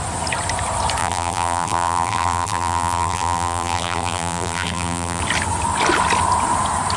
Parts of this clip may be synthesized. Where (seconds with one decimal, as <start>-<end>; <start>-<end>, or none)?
1.0-5.2